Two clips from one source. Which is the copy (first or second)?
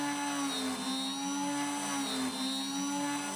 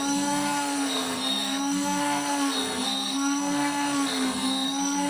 second